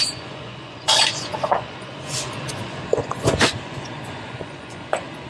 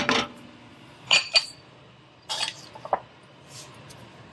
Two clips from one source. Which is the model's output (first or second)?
first